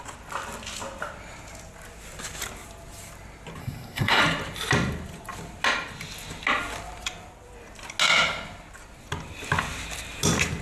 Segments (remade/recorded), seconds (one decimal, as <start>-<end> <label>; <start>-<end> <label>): 0.0-3.6 recorded; 3.6-4.2 remade; 4.2-10.6 recorded